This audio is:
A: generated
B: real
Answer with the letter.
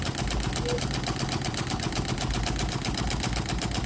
B